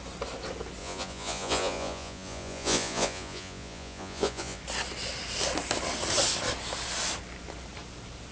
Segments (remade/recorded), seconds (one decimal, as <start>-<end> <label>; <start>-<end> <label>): 0.0-0.8 recorded; 0.8-4.6 remade; 4.6-8.3 recorded